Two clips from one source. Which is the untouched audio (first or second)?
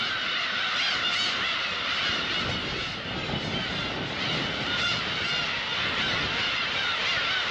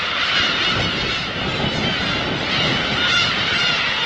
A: second